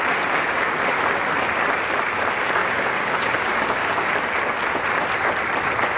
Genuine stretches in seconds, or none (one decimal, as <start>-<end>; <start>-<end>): 0.0-2.6; 4.1-6.0